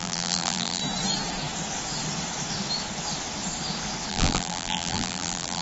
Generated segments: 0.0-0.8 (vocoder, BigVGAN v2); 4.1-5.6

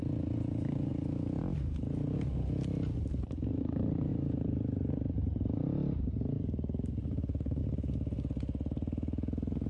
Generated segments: 4.1-7.6 (vocoder, BigVGAN v2)

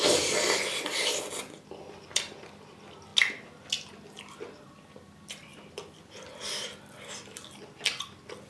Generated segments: 0.0-3.1 (vocoder, BigVGAN v2); 4.2-8.5

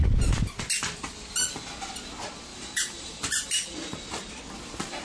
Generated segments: 2.5-4.4 (vocoder, BigVGAN v2)

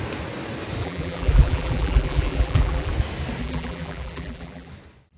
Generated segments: 0.8-2.9 (vocoder, BigVGAN v2); 3.4-4.7

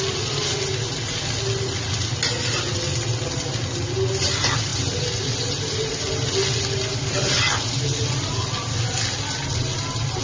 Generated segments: none

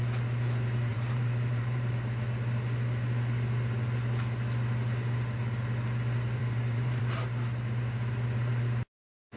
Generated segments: 0.9-1.9 (vocoder, BigVGAN v2); 6.4-7.0